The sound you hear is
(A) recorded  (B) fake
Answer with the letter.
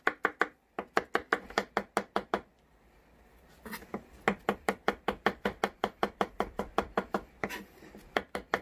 A